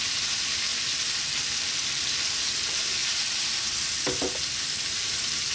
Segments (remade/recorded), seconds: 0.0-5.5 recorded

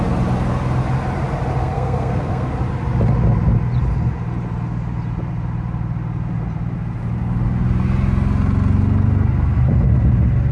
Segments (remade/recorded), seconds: 0.0-1.6 recorded; 1.6-2.5 remade; 2.5-10.5 recorded

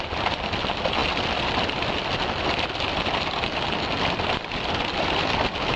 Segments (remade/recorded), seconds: 0.0-5.8 recorded

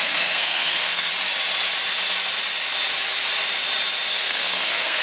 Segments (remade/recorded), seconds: 0.0-1.1 remade; 1.1-4.1 recorded; 4.1-5.0 remade

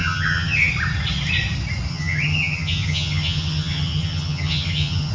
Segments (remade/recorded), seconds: 0.0-0.7 remade; 0.7-1.9 recorded; 1.9-5.1 remade